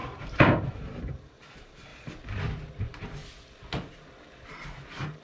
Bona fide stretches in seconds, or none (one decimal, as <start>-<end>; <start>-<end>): 1.9-2.8; 3.2-3.7